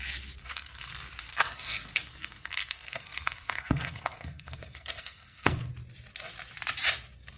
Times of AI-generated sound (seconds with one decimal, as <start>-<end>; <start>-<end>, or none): 0.4-0.9; 1.3-5.7